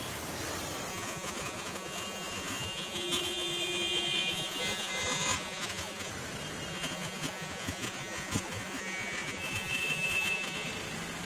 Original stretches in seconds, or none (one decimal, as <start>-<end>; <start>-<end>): 0.0-0.9; 6.1-6.7; 10.7-11.2